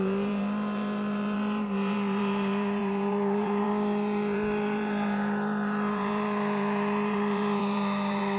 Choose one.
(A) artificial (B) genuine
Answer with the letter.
A